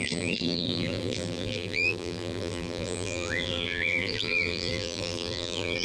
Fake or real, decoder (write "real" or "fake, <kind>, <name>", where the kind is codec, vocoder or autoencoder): fake, vocoder, BigVGAN v2